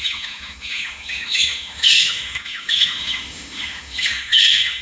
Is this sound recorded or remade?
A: remade